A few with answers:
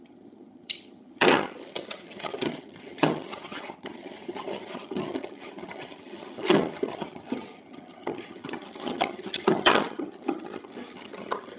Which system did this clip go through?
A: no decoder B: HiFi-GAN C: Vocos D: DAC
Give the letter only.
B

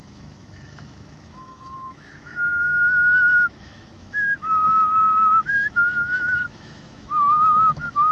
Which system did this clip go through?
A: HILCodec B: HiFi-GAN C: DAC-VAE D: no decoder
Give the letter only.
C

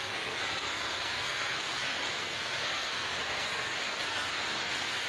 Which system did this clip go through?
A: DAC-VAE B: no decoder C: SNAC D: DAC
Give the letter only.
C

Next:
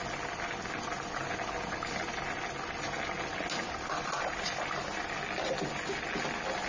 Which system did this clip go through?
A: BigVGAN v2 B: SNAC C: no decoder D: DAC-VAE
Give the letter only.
C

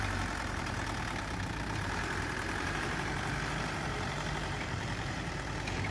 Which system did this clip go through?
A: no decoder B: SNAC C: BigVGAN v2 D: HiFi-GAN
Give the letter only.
C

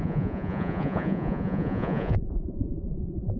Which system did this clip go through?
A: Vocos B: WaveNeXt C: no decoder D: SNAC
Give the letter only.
A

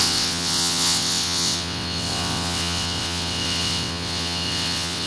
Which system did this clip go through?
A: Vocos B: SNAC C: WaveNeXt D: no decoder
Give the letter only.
C